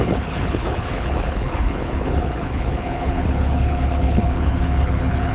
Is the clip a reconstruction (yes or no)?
yes